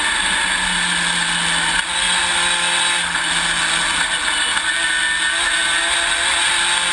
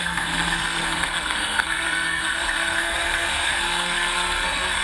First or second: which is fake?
second